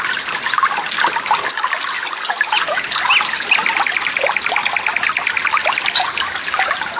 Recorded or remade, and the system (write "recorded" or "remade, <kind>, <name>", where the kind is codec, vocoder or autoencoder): recorded